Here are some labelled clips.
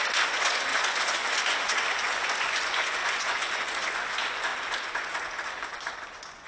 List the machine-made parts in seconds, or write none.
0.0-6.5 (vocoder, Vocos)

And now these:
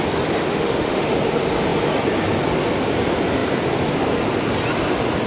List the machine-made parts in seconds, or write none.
0.5-1.1 (autoencoder, DAC-VAE)

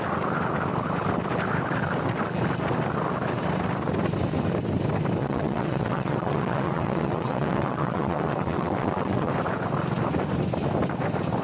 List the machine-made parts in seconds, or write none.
5.2-9.3 (vocoder, WaveNeXt)

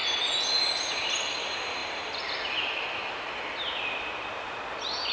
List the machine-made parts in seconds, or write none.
none

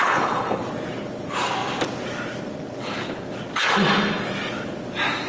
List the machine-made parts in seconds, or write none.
0.0-0.6 (codec, HILCodec)

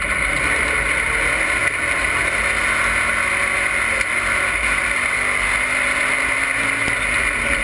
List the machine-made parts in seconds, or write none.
none

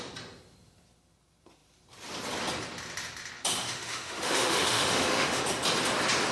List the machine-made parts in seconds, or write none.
3.6-5.4 (autoencoder, DAC-VAE)

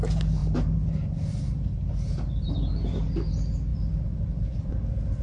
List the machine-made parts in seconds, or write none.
0.4-2.7 (vocoder, BigVGAN v2)